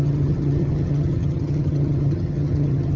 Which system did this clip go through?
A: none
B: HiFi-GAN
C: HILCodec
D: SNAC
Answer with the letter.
B